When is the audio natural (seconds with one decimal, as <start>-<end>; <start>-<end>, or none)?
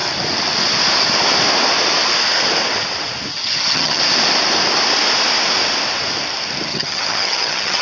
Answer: 0.0-3.3; 4.0-6.7